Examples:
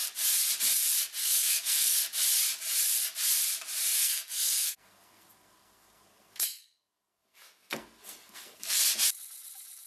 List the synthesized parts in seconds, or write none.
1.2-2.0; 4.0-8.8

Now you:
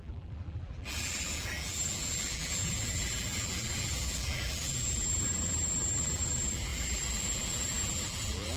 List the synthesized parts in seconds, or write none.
0.0-8.6

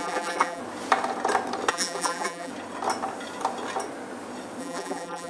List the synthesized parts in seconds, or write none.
0.0-0.6; 1.7-2.5; 4.6-5.3

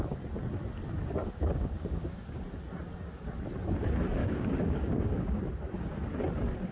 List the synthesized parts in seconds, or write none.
1.2-2.4; 4.2-5.4